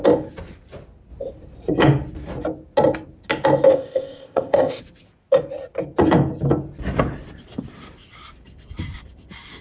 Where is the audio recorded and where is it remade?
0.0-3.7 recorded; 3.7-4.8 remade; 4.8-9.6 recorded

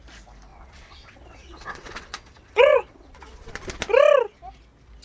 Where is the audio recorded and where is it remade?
0.0-0.5 recorded; 0.5-3.5 remade; 3.5-5.0 recorded